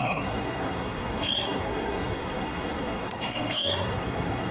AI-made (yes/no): yes